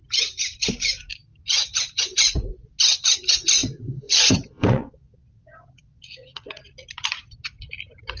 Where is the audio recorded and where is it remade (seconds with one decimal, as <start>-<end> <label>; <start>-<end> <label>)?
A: 0.0-3.6 recorded; 3.6-6.6 remade; 6.6-8.2 recorded